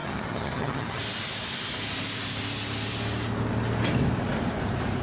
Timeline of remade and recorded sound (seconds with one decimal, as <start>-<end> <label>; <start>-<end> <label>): 0.0-1.0 remade; 1.0-5.0 recorded

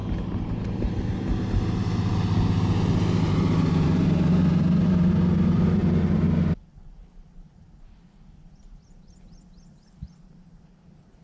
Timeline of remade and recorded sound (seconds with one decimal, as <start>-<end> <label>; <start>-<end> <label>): 0.0-3.3 recorded; 3.3-5.8 remade; 5.8-7.6 recorded; 7.6-11.2 remade

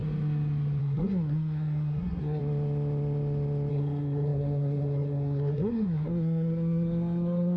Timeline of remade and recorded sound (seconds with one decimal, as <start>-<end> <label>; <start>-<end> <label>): 0.0-0.8 recorded; 0.8-2.4 remade; 2.4-3.7 recorded; 3.7-7.6 remade

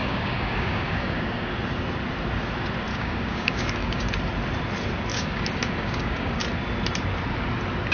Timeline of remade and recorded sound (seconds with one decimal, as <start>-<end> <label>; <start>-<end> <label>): 0.0-1.5 remade; 1.5-2.9 recorded; 2.9-4.1 remade; 4.1-5.1 recorded; 5.1-6.4 remade; 6.4-7.9 recorded

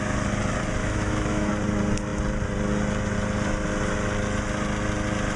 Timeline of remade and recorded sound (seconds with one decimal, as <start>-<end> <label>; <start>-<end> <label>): 0.0-0.8 recorded; 0.8-1.5 remade; 1.5-5.4 recorded

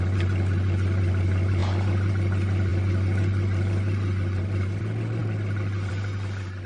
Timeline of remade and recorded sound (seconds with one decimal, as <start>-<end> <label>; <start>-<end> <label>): 0.0-6.7 recorded

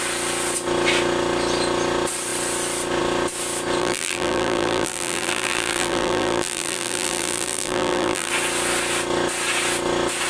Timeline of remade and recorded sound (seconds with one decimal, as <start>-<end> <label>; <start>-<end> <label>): 0.0-3.8 recorded; 3.8-8.3 remade; 8.3-10.3 recorded